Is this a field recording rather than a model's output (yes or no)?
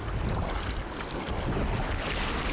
yes